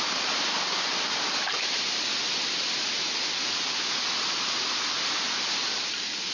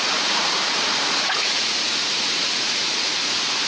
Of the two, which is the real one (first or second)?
first